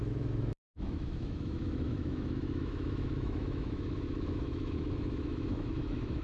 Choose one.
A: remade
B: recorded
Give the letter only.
A